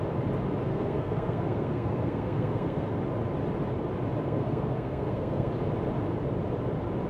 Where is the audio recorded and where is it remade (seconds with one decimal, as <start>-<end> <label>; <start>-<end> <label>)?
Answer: 0.0-0.7 recorded; 0.7-2.9 remade; 2.9-4.2 recorded; 4.2-5.5 remade; 5.5-7.1 recorded